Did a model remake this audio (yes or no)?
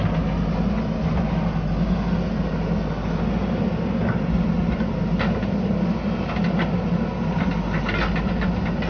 no